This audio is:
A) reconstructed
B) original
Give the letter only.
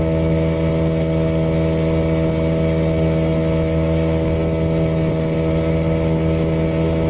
B